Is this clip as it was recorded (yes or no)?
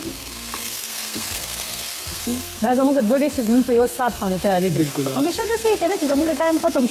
no